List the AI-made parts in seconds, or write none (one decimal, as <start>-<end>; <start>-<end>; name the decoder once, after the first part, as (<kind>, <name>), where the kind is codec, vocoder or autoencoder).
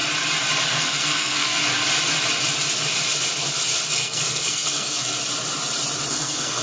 0.7-1.6 (codec, SNAC); 3.9-5.2; 6.1-6.6